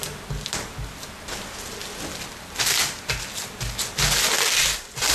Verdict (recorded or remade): recorded